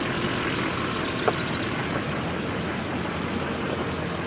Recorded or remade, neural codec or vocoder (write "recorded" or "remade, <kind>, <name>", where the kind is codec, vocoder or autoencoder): recorded